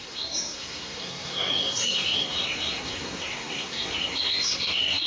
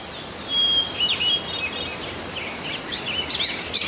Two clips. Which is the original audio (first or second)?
second